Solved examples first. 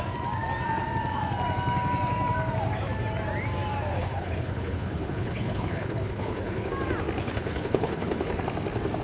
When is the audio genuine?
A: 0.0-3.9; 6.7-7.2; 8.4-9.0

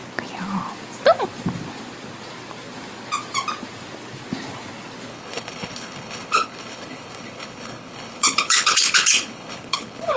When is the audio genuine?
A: 0.0-5.1

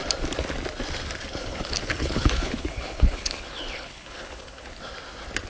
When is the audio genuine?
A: 0.0-1.4; 4.7-5.5

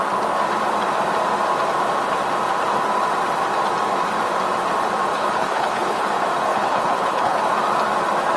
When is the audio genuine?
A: 0.0-5.1; 6.1-6.5; 7.4-8.4